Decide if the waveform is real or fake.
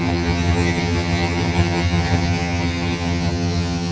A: fake